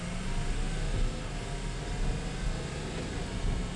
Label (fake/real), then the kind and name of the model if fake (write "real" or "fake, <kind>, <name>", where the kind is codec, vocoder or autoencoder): real